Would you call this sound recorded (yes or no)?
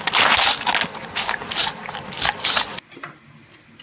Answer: yes